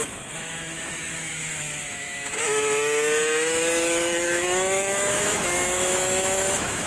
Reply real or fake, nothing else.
fake